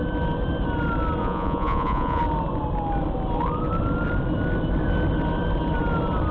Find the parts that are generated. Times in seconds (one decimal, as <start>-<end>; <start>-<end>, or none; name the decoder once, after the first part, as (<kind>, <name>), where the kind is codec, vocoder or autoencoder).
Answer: 1.2-2.2 (vocoder, Vocos)